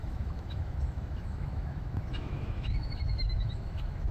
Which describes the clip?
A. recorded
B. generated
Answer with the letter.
B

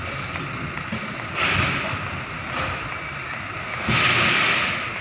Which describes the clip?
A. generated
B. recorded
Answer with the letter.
B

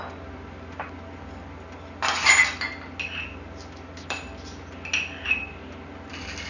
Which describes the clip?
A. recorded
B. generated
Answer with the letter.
A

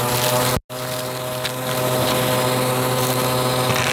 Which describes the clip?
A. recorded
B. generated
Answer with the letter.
A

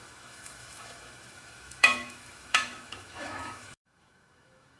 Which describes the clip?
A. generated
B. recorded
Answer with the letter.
A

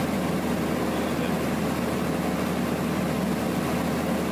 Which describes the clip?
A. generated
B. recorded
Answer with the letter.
B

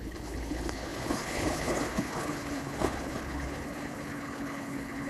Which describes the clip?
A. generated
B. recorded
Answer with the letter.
A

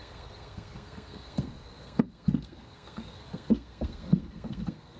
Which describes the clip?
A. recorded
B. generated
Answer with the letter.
B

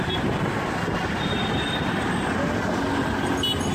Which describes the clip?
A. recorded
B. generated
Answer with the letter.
A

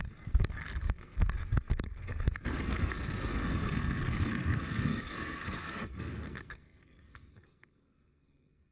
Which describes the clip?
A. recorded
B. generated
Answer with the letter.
B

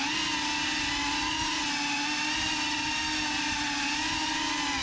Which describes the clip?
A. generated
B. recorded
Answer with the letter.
B